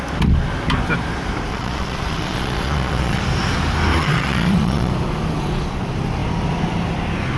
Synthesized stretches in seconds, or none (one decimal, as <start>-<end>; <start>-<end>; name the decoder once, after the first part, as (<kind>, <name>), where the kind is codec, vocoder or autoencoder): 1.5-3.2 (vocoder, Vocos); 3.9-4.9